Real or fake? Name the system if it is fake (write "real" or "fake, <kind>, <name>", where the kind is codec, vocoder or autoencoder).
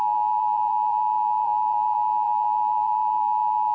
fake, vocoder, BigVGAN v2